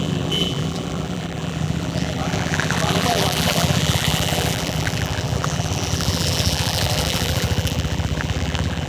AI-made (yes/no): yes